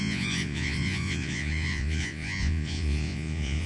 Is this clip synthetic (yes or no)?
yes